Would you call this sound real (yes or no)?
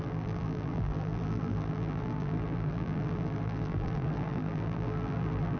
no